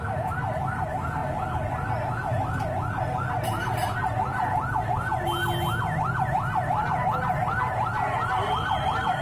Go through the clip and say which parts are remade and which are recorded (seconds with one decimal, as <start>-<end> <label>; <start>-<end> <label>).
0.0-9.2 recorded